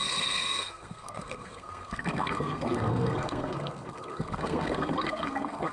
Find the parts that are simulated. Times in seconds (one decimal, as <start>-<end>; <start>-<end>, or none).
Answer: 0.0-5.7